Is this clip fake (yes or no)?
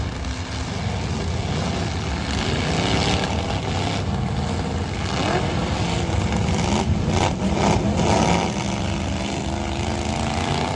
no